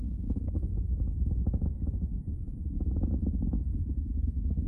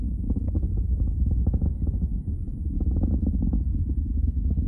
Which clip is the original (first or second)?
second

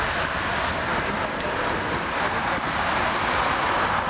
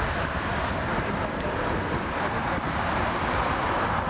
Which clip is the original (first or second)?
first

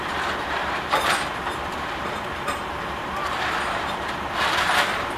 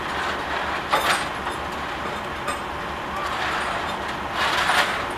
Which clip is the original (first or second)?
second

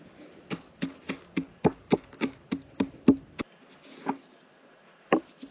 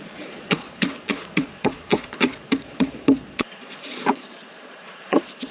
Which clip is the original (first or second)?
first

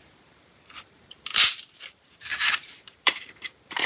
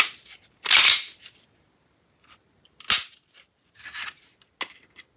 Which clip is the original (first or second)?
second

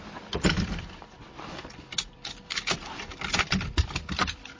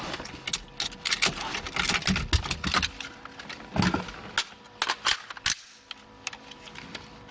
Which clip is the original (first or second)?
second